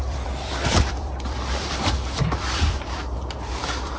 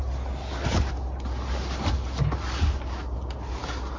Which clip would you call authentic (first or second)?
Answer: second